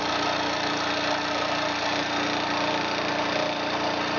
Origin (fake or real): real